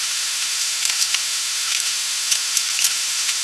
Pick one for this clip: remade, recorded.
remade